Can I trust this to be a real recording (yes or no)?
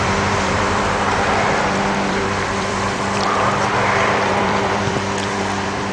no